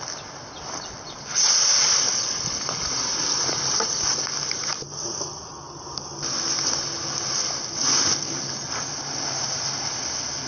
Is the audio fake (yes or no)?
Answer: no